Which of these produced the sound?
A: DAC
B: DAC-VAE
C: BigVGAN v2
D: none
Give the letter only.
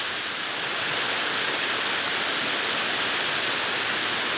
D